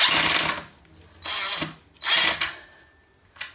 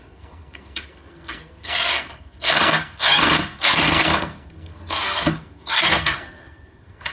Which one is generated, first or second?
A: second